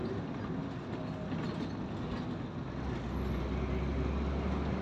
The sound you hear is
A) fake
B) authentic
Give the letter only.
B